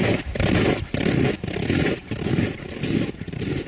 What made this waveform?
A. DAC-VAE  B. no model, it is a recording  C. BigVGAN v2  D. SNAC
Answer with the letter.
B